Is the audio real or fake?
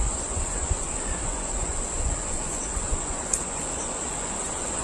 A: fake